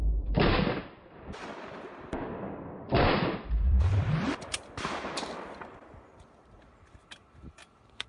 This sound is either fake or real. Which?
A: fake